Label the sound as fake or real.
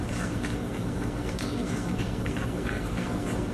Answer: fake